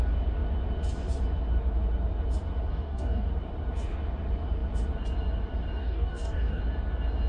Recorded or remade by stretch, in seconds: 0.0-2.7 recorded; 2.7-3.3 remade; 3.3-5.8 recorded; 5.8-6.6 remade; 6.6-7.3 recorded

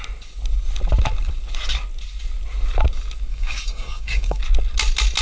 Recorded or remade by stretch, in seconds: 0.0-3.3 recorded; 3.3-4.4 remade; 4.4-5.2 recorded

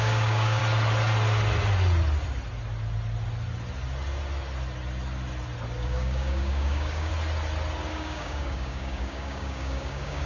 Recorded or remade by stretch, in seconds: 0.0-0.6 remade; 0.6-5.8 recorded; 5.8-7.1 remade; 7.1-7.9 recorded; 7.9-10.3 remade

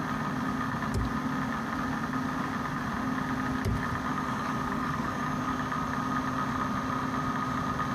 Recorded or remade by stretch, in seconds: 0.0-4.1 recorded; 4.1-5.4 remade; 5.4-7.9 recorded